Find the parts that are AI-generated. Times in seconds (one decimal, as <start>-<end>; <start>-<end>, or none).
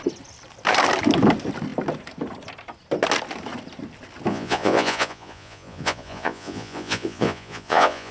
4.3-8.1